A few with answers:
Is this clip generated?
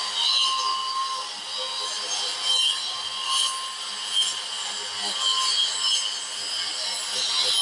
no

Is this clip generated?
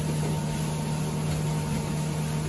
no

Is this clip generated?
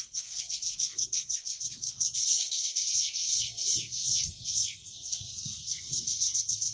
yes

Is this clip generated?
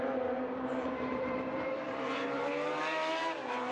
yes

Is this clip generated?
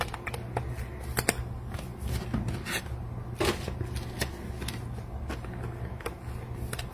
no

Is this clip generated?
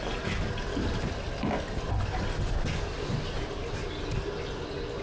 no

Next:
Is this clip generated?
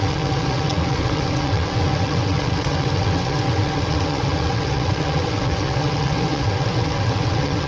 yes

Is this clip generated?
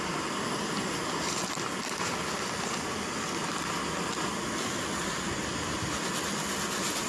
no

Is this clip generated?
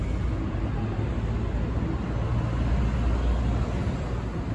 no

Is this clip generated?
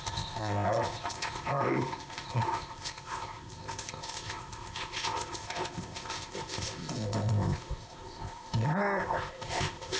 yes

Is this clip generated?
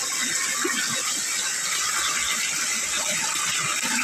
no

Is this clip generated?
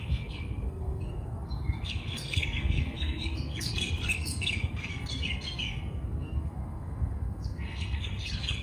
yes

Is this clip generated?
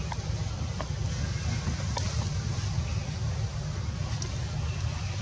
no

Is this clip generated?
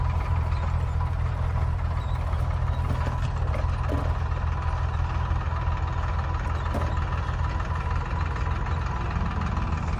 no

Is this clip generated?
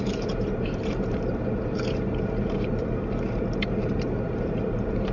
yes